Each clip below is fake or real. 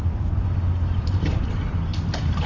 real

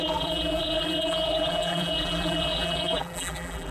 fake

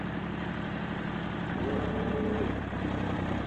fake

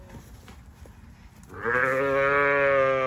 real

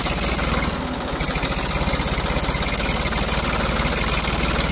real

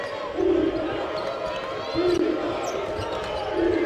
real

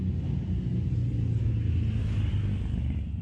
real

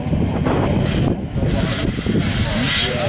real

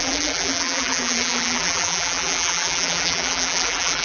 fake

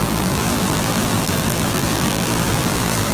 fake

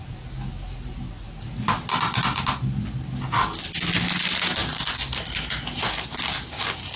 real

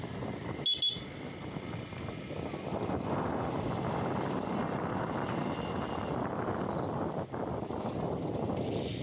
real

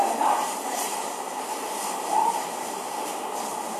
fake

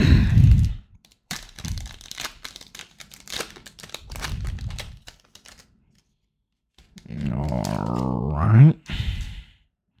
fake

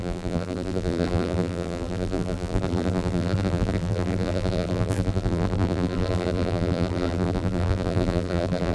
fake